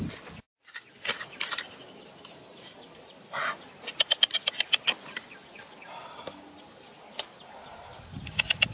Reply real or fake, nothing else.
real